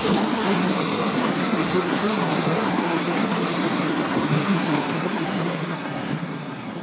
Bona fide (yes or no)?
no